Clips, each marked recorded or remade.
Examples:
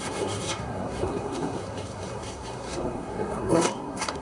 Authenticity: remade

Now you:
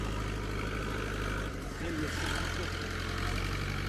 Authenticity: recorded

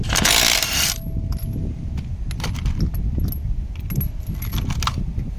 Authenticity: recorded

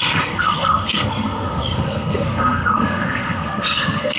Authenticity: remade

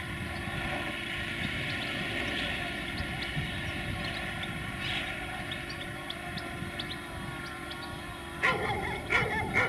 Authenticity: recorded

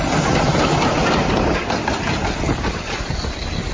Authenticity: recorded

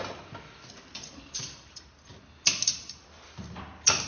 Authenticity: recorded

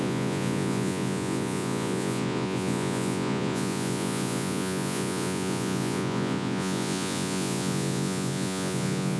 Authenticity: remade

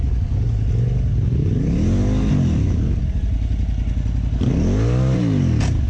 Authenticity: recorded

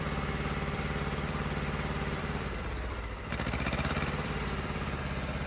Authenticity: remade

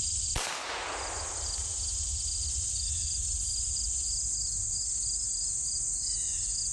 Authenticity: recorded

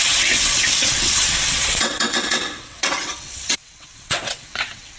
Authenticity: remade